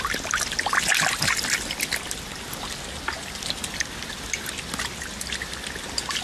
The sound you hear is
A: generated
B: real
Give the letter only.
B